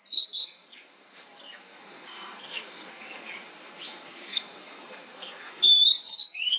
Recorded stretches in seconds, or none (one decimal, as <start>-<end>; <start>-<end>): none